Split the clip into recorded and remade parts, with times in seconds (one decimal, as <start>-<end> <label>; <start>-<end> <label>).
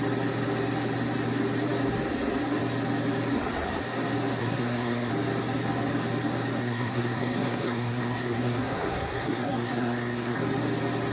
0.0-4.4 recorded; 4.4-5.1 remade; 5.1-6.6 recorded; 6.6-10.4 remade; 10.4-11.1 recorded